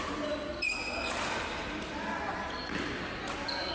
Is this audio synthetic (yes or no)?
no